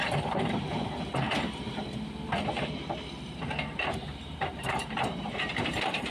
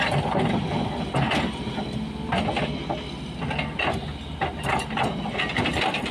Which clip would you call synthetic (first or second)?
first